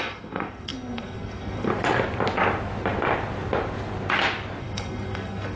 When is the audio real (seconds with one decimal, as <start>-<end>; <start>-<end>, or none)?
1.7-4.6